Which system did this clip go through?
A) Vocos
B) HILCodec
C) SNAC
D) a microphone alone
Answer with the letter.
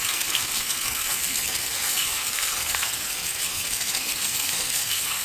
C